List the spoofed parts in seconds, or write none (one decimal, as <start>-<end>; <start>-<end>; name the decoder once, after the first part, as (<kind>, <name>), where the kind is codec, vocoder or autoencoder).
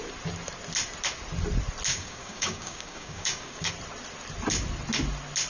1.9-3.7 (codec, DAC)